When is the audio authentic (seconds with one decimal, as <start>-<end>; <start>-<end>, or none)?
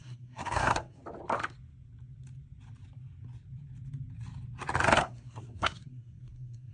1.0-5.0